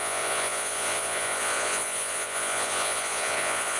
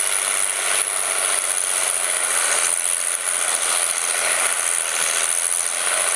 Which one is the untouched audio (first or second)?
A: second